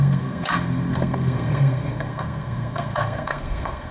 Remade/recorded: remade